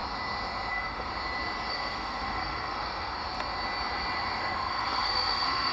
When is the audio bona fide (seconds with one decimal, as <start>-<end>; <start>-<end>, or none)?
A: 0.0-0.7; 1.1-1.7; 3.2-4.4